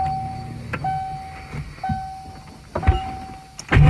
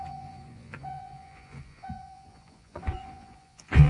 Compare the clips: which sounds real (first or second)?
first